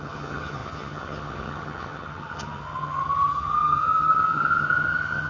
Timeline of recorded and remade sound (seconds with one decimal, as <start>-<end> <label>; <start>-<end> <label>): 0.0-5.3 remade